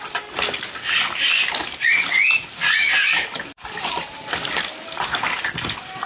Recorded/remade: recorded